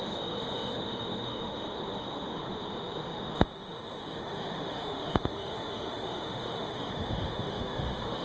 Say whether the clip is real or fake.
fake